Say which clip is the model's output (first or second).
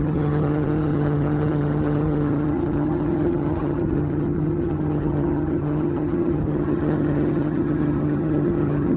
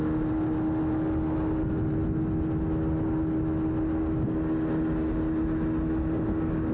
first